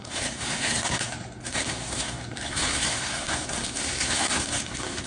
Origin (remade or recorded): remade